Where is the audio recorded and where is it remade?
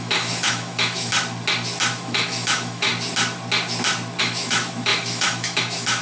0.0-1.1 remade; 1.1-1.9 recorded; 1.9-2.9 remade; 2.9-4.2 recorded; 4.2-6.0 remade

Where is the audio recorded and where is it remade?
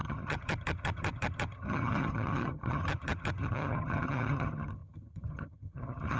0.0-6.2 remade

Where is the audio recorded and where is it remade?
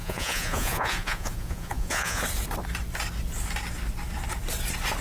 0.0-2.2 remade; 2.2-5.0 recorded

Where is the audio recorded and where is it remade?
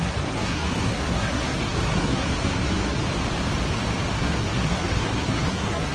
0.0-3.0 remade; 3.0-4.2 recorded; 4.2-5.9 remade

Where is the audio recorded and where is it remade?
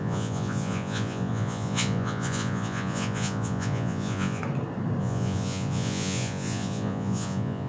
0.0-4.4 remade; 4.4-5.0 recorded; 5.0-7.7 remade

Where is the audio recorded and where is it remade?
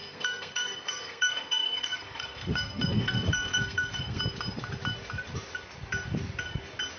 0.0-4.2 remade; 4.2-7.0 recorded